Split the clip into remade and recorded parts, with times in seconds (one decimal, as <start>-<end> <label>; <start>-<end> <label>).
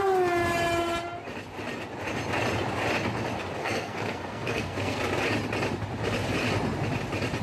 0.0-3.6 recorded; 3.6-5.0 remade; 5.0-7.4 recorded